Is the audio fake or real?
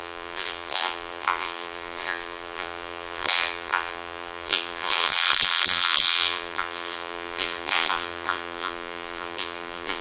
fake